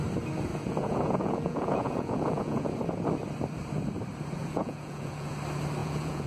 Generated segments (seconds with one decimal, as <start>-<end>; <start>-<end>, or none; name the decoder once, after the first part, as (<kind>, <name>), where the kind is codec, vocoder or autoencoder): 0.5-2.7 (vocoder, Vocos); 4.4-5.3; 5.8-6.3